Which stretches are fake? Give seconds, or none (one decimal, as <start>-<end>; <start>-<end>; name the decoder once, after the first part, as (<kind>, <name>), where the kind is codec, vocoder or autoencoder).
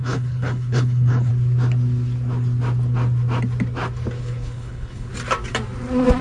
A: 0.0-1.3 (codec, HILCodec); 4.2-5.1